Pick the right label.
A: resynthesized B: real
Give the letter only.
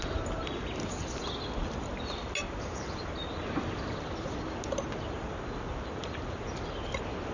B